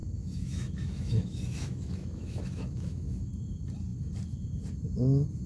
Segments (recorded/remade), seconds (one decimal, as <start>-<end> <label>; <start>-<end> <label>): 0.0-3.3 remade; 3.3-5.5 recorded